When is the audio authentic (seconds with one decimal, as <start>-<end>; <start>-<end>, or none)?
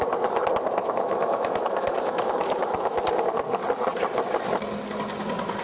0.0-0.8; 3.0-5.6